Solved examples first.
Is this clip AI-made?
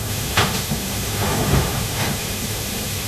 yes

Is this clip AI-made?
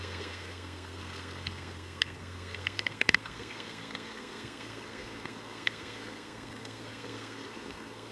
yes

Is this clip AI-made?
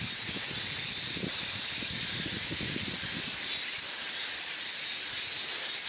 no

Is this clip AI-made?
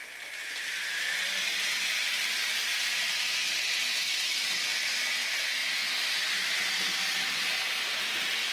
no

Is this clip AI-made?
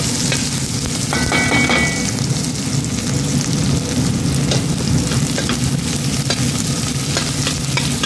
no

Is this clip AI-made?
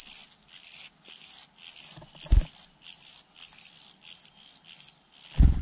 no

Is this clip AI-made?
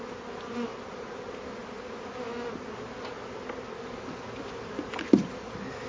no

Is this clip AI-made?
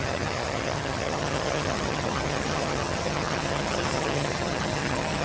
yes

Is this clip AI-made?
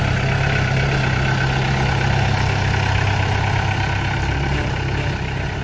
no